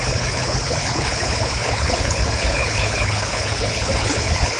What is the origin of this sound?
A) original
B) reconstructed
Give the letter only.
B